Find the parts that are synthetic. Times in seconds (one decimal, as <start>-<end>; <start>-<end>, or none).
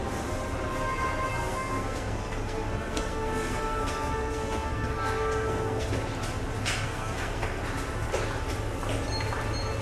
1.3-5.9; 6.6-7.6